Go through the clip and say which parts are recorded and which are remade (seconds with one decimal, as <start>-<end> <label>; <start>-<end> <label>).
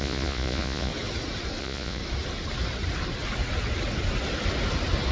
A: 0.0-0.9 remade; 0.9-1.6 recorded; 1.6-2.0 remade; 2.0-5.1 recorded